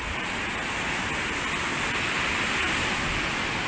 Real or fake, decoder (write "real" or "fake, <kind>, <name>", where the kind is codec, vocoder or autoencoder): real